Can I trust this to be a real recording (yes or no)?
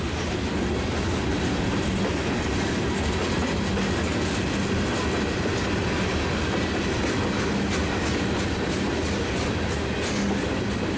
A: yes